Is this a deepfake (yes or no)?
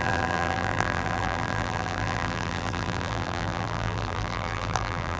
yes